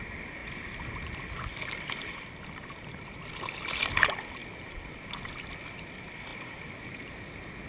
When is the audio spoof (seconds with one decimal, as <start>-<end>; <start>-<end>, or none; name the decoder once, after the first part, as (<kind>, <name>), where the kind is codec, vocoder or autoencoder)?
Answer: 4.4-4.9 (vocoder, BigVGAN v2)